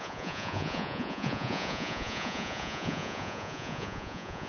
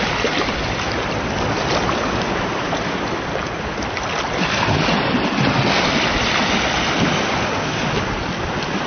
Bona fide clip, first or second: second